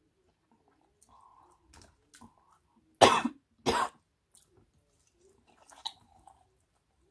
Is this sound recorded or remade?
recorded